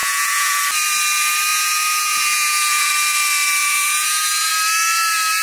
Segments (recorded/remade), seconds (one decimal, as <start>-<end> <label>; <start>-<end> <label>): 0.0-0.6 remade; 0.6-1.5 recorded; 1.5-2.9 remade; 2.9-3.6 recorded; 3.6-4.5 remade; 4.5-5.4 recorded